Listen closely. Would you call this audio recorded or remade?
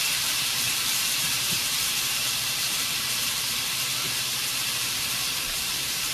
remade